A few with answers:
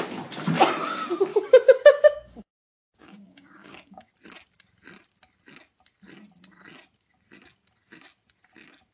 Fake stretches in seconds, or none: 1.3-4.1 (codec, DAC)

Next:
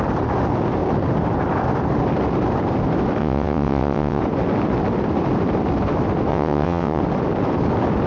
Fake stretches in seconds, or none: 3.2-4.2 (vocoder, WaveNeXt); 6.3-7.0

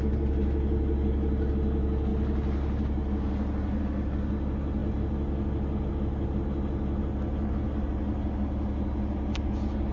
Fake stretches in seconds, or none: none